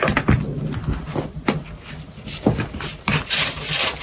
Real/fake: real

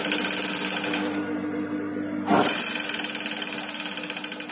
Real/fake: real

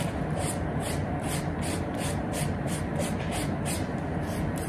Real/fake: fake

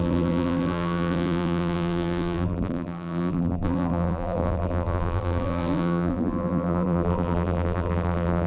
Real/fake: fake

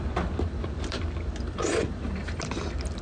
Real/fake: fake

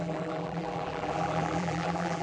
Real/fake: fake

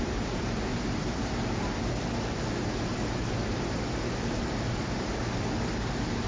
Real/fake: fake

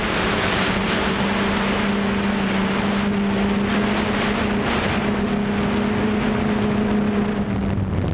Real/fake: real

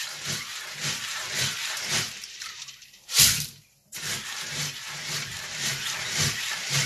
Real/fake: fake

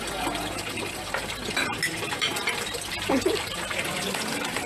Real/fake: real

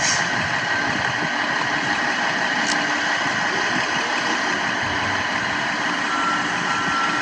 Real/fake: real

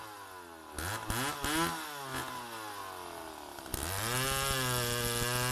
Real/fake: real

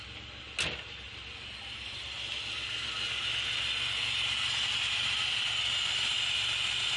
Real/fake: real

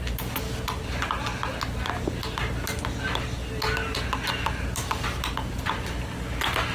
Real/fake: real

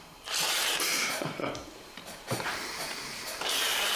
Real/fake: fake